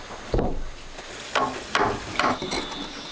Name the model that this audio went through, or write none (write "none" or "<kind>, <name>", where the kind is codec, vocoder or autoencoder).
none